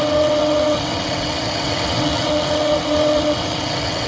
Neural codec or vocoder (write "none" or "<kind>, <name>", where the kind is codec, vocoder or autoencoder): vocoder, WaveNeXt